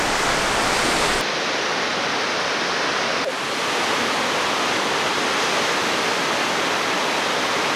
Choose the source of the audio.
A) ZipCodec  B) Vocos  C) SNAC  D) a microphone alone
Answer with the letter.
D